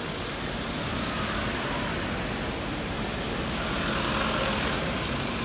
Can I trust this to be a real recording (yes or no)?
yes